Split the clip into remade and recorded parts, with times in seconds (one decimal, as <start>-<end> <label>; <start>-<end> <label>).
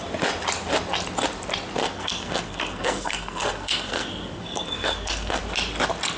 0.0-1.8 recorded; 1.8-5.4 remade; 5.4-6.2 recorded